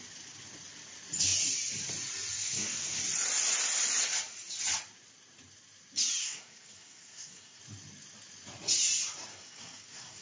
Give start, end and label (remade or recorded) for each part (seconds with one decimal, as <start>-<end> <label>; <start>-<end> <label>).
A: 0.0-2.4 recorded; 2.4-3.0 remade; 3.0-6.2 recorded; 6.2-7.6 remade; 7.6-9.3 recorded; 9.3-10.2 remade